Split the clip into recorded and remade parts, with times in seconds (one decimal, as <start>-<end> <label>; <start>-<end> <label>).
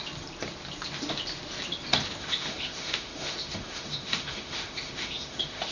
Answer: 0.0-2.2 recorded; 2.2-5.7 remade